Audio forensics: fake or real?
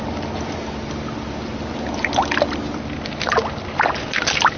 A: real